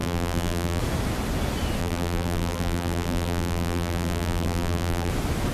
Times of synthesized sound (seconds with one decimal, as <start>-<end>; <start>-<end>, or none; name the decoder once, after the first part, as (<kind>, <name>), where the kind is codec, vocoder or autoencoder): 0.0-0.8 (vocoder, BigVGAN v2); 1.8-5.1